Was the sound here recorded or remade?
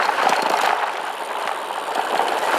remade